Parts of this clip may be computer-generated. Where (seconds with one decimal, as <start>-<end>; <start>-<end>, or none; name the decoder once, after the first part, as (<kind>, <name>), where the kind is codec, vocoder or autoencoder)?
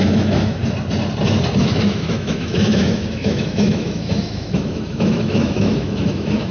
0.0-0.6 (autoencoder, DAC-VAE); 1.6-6.5